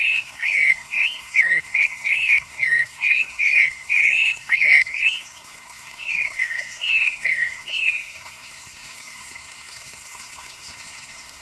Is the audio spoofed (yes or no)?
yes